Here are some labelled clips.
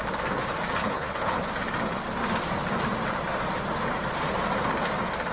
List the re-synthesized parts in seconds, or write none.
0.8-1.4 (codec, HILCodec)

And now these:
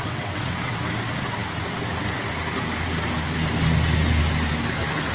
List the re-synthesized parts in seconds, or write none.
0.0-0.7 (vocoder, WaveNeXt)

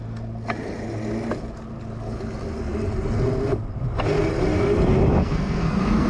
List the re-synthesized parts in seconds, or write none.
5.2-6.1 (codec, SNAC)

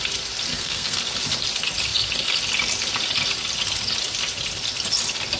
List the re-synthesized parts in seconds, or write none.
0.5-1.0 (codec, SNAC)